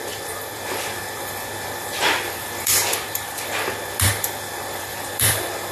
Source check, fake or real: fake